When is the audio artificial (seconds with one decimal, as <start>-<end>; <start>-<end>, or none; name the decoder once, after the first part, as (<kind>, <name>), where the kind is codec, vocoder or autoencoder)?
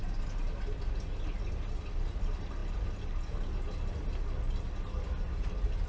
none